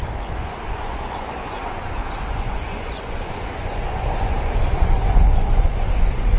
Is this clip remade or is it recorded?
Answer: remade